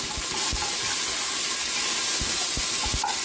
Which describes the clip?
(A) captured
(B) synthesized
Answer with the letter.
A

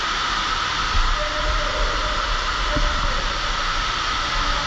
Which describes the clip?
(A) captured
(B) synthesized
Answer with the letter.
A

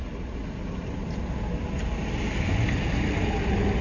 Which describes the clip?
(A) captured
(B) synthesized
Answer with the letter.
A